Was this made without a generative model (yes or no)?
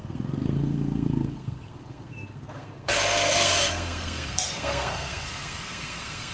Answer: no